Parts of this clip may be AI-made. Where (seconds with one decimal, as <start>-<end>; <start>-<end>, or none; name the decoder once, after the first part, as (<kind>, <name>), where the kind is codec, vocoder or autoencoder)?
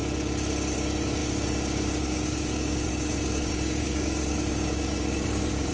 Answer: 0.7-5.7 (codec, DAC)